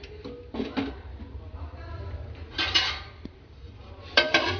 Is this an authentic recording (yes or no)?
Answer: no